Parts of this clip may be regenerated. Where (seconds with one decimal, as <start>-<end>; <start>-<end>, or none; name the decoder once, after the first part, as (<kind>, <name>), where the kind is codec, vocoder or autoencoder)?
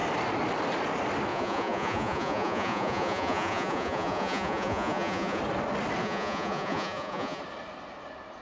1.3-5.4 (vocoder, Vocos); 6.0-7.4